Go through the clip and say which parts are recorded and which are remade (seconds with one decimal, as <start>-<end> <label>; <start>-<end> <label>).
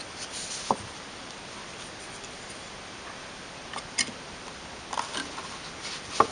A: 0.0-6.3 recorded